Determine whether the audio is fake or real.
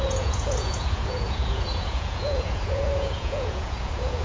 fake